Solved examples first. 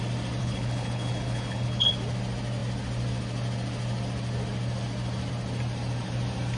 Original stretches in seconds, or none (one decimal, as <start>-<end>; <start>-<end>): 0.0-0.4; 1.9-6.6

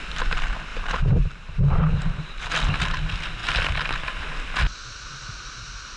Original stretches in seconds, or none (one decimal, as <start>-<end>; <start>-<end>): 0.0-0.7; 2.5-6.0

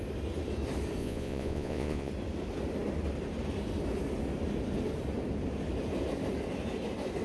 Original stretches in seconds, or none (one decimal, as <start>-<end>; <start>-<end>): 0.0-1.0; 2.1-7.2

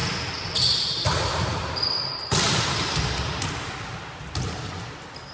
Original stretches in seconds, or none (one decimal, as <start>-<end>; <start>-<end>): 0.0-5.3

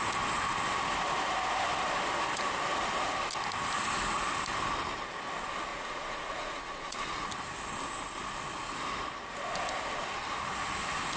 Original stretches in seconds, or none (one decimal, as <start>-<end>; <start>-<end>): 0.0-5.7; 7.3-11.2

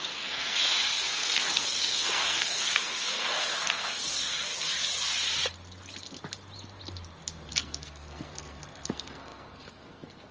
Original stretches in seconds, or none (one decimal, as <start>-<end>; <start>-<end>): 4.5-7.5

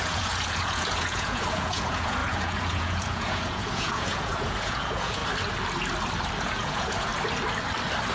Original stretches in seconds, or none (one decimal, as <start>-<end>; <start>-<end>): 5.2-6.4; 7.1-8.1